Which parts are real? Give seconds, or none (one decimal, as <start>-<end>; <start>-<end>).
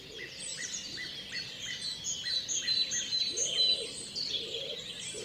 0.0-0.5; 2.6-5.2